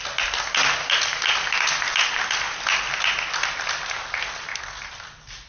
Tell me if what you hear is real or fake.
real